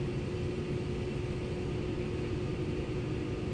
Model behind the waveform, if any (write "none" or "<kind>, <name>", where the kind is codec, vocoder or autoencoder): none